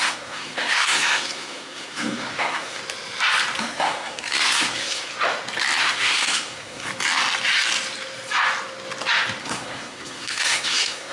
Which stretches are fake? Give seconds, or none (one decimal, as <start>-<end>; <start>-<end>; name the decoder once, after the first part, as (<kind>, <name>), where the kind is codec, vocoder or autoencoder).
0.0-2.8 (codec, SNAC); 3.6-5.1; 5.8-6.9; 9.4-11.1